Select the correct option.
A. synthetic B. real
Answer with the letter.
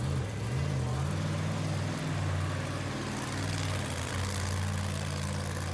B